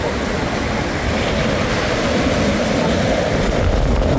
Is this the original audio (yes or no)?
yes